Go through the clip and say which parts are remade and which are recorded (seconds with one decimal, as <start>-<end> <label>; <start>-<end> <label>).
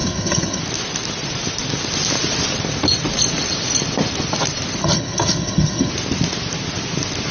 0.0-0.6 remade; 0.6-4.8 recorded; 4.8-5.9 remade; 5.9-7.3 recorded